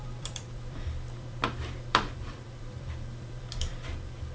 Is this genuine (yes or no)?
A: no